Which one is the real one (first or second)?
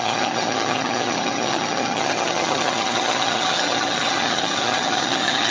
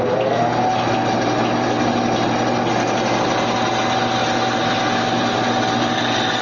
second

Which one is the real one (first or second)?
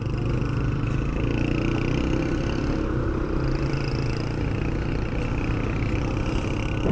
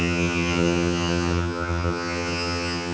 first